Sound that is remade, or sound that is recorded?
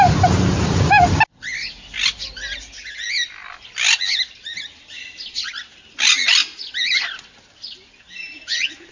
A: recorded